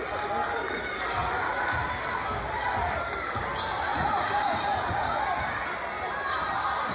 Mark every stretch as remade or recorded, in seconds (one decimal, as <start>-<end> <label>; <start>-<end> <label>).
0.0-1.2 recorded; 1.2-1.9 remade; 1.9-3.9 recorded; 3.9-5.2 remade; 5.2-6.9 recorded